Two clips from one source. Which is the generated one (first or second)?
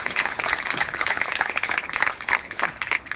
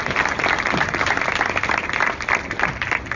first